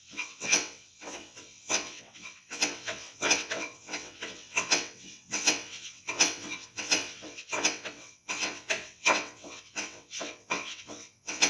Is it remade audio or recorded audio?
remade